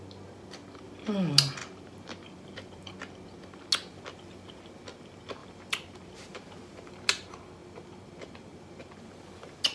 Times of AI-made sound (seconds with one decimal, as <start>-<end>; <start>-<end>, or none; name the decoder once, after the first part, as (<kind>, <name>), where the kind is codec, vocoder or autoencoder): 1.6-2.9 (vocoder, BigVGAN v2); 5.4-7.0; 7.6-9.2